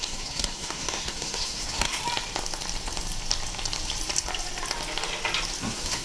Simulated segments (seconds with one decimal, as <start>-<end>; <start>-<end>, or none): 0.0-2.0; 5.6-6.0